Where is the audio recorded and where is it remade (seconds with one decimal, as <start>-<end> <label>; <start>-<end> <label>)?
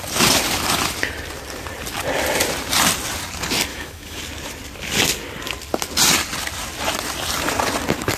0.0-3.7 recorded; 3.7-4.2 remade; 4.2-8.2 recorded